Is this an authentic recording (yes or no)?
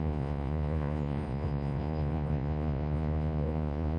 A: no